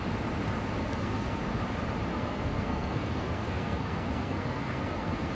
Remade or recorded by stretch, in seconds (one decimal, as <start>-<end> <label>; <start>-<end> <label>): 0.0-0.8 recorded; 0.8-1.4 remade; 1.4-2.1 recorded; 2.1-5.3 remade